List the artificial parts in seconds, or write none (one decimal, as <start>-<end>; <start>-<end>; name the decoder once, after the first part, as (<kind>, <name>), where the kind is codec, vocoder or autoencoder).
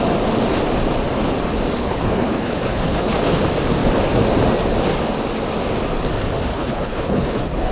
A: 1.8-3.4 (codec, HILCodec); 6.5-7.7